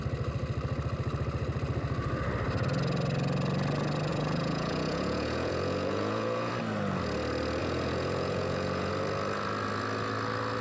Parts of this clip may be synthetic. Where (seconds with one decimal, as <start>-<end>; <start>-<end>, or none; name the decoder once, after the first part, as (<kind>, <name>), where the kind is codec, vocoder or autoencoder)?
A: 4.1-6.5 (vocoder, Vocos); 7.6-8.9